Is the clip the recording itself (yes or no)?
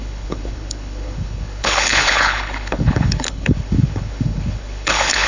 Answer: no